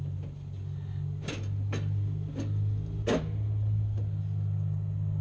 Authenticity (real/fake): real